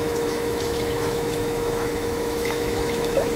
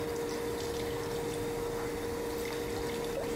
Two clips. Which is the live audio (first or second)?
second